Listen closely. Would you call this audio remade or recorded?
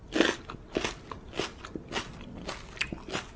recorded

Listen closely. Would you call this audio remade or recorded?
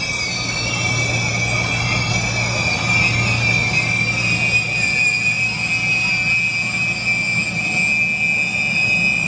recorded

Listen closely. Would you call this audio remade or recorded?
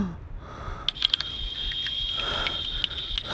recorded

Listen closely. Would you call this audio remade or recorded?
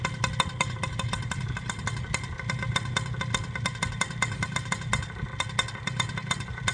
recorded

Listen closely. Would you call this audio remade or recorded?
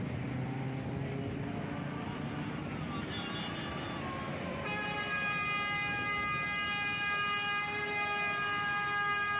recorded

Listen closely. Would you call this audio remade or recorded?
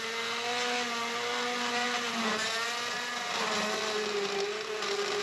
recorded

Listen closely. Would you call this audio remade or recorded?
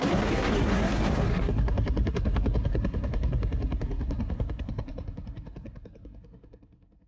remade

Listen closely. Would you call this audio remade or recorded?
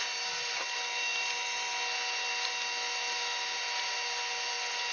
recorded